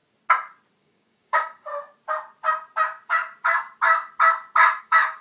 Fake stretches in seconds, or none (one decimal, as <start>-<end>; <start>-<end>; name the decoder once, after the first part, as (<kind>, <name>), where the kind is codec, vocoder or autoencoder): 0.8-1.7 (codec, DAC); 4.8-5.2